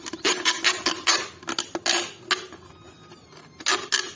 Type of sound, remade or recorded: recorded